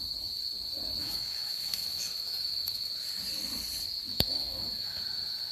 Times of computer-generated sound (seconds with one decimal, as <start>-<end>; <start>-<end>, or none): 1.0-2.9; 4.1-5.0